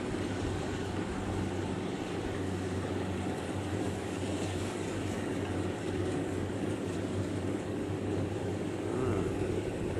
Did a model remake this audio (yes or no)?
yes